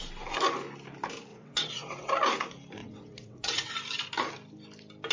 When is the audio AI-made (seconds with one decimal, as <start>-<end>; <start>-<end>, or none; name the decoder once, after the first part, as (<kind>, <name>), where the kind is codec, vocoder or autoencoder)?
1.3-2.1 (vocoder, WaveNeXt); 2.8-3.7